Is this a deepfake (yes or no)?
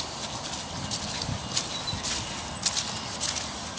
no